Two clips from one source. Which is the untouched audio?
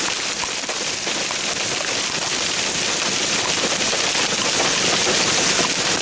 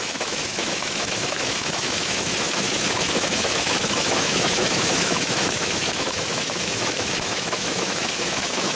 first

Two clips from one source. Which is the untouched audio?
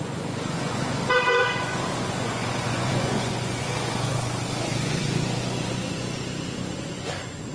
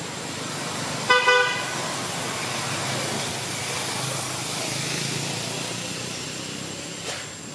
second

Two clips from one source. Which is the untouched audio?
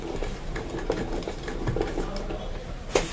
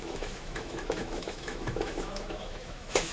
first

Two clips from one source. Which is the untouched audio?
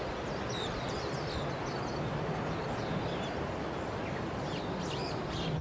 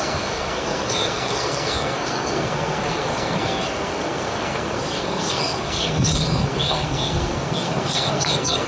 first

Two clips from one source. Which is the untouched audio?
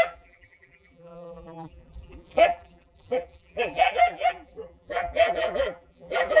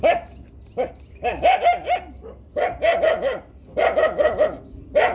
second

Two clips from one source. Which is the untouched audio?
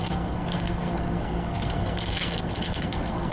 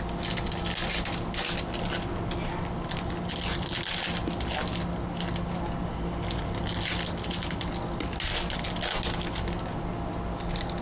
second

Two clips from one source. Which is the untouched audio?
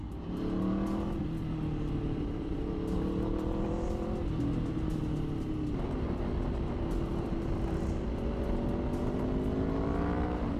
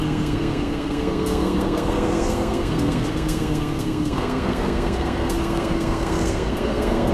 first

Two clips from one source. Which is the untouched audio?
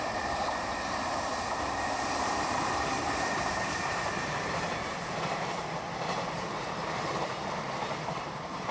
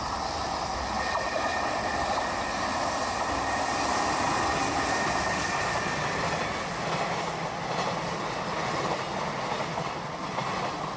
second